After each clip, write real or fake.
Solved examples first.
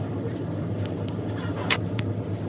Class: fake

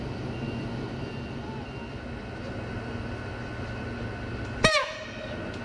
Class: real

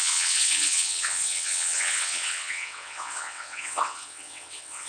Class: fake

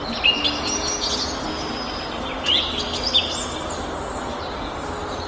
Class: real